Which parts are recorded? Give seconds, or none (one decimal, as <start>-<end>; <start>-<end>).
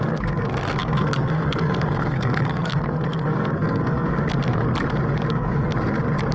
4.7-5.3; 5.7-6.3